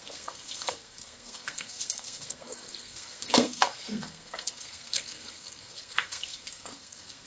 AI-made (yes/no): yes